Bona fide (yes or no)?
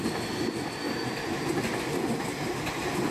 yes